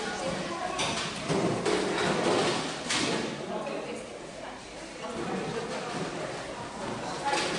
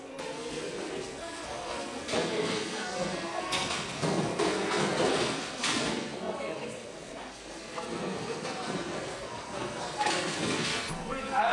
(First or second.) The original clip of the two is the first